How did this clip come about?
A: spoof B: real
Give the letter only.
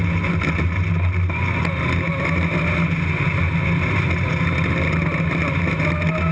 B